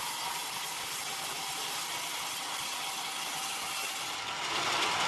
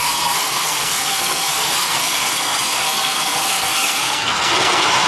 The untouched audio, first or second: first